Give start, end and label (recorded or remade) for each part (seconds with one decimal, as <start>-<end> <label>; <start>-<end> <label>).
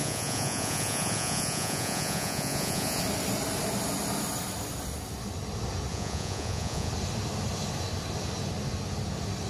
0.0-3.0 remade; 3.0-5.9 recorded; 5.9-6.9 remade; 6.9-9.5 recorded